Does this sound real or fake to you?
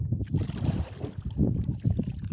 real